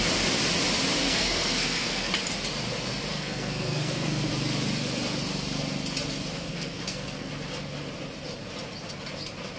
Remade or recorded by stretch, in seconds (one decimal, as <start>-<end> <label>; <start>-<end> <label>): 0.0-1.0 recorded; 1.0-2.1 remade; 2.1-3.1 recorded; 3.1-4.3 remade; 4.3-6.5 recorded; 6.5-7.3 remade; 7.3-9.6 recorded